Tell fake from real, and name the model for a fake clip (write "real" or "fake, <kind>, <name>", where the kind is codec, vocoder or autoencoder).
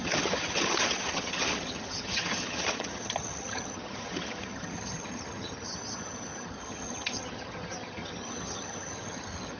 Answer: fake, vocoder, HiFi-GAN